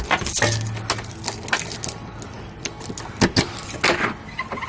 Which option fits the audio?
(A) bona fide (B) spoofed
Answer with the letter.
A